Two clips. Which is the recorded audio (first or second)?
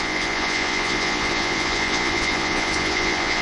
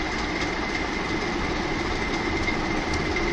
second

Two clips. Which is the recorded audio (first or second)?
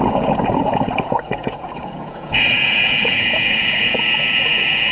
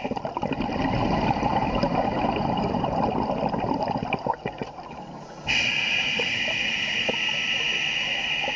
second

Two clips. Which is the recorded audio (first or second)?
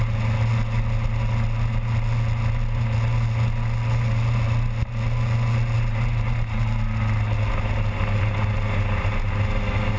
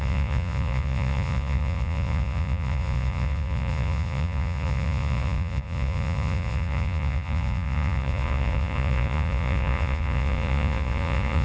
first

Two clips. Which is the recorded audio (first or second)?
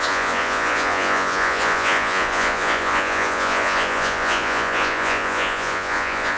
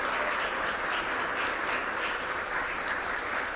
second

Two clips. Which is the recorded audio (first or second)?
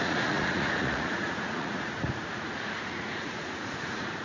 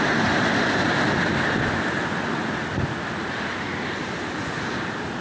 second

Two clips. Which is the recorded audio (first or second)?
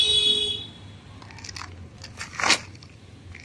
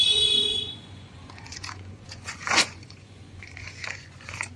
first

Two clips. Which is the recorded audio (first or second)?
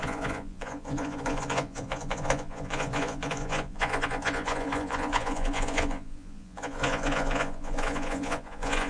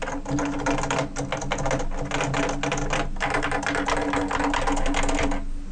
second